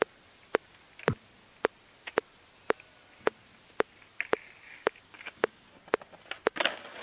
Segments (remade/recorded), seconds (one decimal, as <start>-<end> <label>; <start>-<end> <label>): 0.0-4.7 recorded; 4.7-5.7 remade; 5.7-7.0 recorded